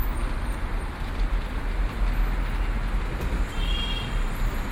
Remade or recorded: recorded